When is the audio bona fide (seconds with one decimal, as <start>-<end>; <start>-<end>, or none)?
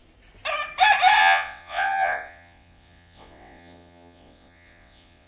0.0-1.2